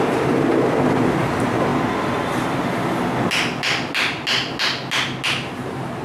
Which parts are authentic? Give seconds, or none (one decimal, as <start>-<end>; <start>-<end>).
0.5-1.2; 1.7-5.3